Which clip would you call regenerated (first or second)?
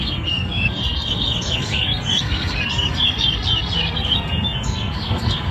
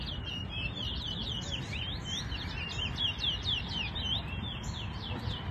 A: first